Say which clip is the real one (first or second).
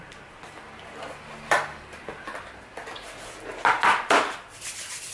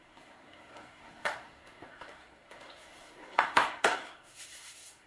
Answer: first